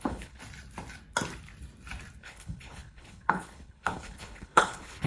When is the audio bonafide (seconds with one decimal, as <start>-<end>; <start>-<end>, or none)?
0.4-2.2